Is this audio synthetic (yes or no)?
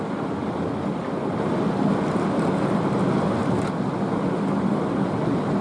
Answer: no